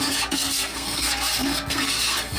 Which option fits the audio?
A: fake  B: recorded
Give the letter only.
A